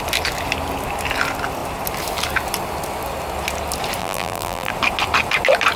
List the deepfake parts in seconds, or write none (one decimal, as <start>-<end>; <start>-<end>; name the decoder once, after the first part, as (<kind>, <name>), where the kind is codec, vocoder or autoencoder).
4.0-4.7 (vocoder, BigVGAN v2)